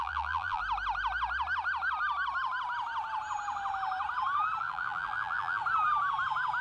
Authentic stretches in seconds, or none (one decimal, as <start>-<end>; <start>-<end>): 0.6-4.6; 5.6-6.6